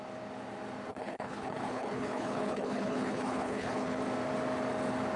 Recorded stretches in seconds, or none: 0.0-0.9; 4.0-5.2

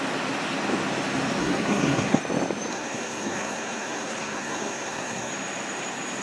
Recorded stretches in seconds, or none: 0.0-1.4; 2.2-2.7; 5.3-6.2

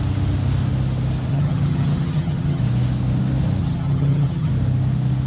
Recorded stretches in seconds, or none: 0.0-1.3; 2.6-3.6; 4.5-5.3

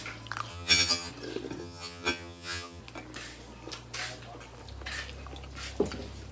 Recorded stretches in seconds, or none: 0.0-0.5; 1.1-1.6; 2.8-6.3

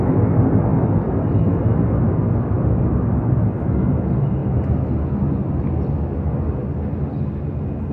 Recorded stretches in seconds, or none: 0.0-7.9